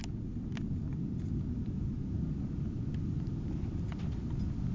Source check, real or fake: real